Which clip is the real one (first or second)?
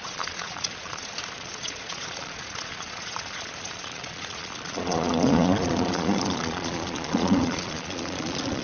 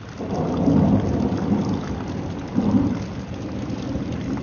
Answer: second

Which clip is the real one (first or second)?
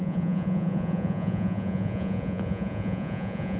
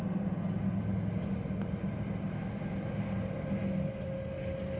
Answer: second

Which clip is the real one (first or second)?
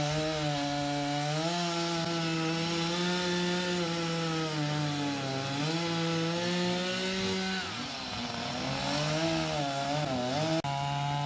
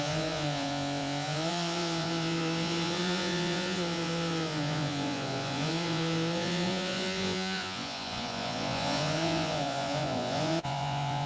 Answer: first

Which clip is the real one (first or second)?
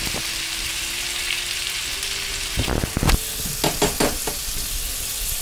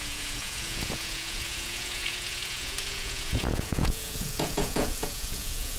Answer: first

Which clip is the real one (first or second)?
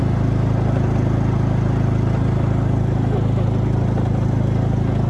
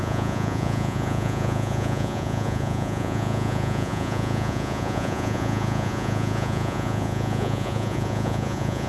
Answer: first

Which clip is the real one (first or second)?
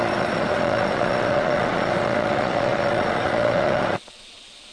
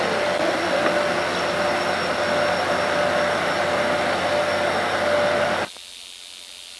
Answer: second